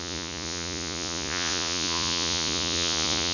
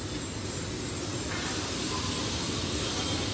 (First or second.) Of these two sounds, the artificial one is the first